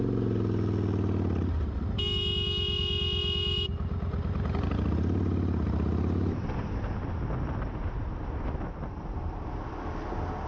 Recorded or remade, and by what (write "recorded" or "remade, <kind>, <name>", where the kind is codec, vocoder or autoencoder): recorded